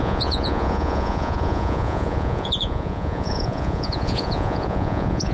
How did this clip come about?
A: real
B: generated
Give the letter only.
B